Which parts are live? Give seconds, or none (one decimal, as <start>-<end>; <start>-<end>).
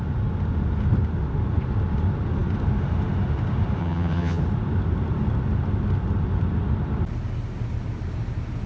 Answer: 0.0-3.8; 4.4-8.7